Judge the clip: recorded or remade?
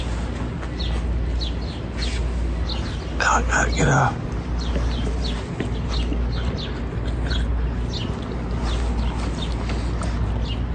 recorded